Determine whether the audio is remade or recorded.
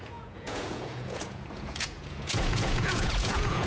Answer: remade